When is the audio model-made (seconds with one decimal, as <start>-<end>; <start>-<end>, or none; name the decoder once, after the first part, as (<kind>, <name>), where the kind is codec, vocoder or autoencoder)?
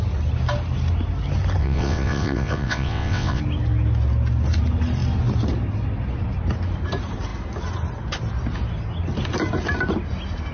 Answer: 1.6-3.4 (vocoder, WaveNeXt)